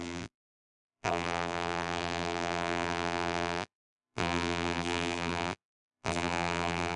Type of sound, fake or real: fake